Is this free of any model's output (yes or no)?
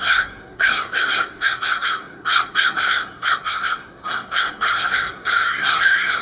no